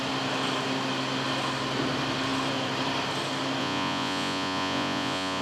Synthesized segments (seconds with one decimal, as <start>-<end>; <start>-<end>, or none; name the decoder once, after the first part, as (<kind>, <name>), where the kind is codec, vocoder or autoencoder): 3.6-5.4 (vocoder, Vocos)